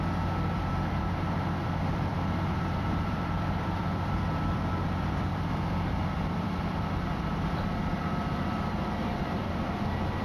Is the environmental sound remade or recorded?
remade